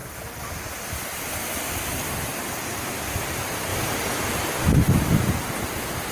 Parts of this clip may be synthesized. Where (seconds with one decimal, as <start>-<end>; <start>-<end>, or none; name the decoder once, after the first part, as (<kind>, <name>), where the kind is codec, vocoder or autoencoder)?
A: none